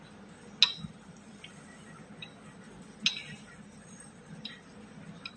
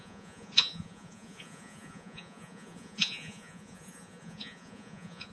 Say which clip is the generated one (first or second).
second